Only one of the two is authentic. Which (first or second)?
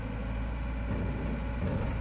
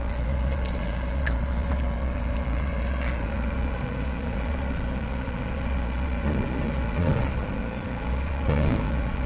first